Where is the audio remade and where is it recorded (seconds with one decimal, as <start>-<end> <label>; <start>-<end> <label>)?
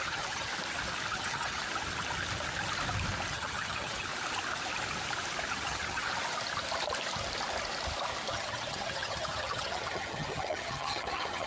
0.0-0.5 remade; 0.5-1.1 recorded; 1.1-1.6 remade; 1.6-3.3 recorded; 3.3-4.1 remade; 4.1-5.5 recorded; 5.5-6.1 remade; 6.1-8.3 recorded; 8.3-11.5 remade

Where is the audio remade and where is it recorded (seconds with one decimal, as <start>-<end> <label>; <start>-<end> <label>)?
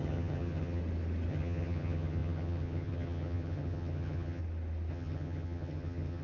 0.0-0.8 remade; 0.8-1.3 recorded; 1.3-4.4 remade; 4.4-4.9 recorded; 4.9-6.2 remade